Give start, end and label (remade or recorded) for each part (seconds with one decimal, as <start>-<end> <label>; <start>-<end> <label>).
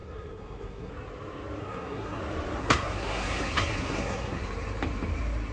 0.0-0.9 remade; 0.9-1.6 recorded; 1.6-2.2 remade; 2.2-2.6 recorded; 2.6-4.4 remade; 4.4-5.5 recorded